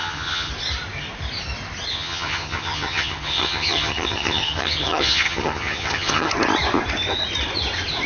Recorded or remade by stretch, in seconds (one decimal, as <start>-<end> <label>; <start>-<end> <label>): 0.0-0.5 remade; 0.5-1.9 recorded; 1.9-6.3 remade; 6.3-8.1 recorded